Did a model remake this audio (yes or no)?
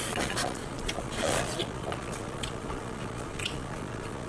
yes